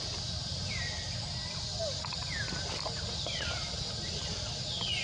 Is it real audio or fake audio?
real